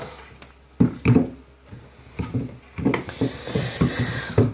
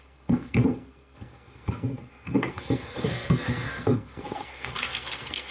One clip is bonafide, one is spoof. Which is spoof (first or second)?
second